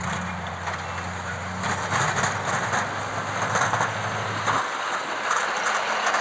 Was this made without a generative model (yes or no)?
yes